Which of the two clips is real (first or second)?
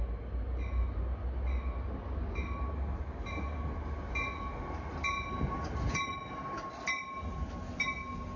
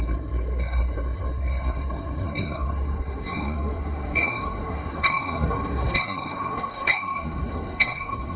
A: first